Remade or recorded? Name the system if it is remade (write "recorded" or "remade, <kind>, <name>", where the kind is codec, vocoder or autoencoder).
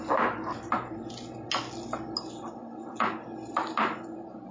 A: recorded